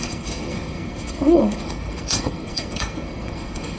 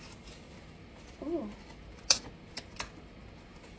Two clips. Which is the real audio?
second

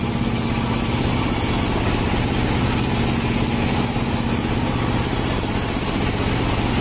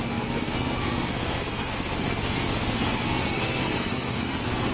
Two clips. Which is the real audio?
first